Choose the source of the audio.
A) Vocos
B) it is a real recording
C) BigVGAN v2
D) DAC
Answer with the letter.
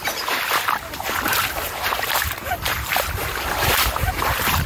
C